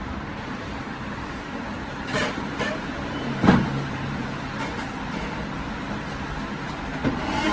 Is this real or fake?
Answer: fake